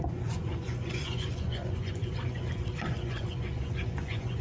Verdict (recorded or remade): remade